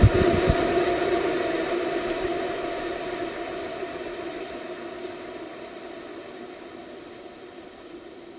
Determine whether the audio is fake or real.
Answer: real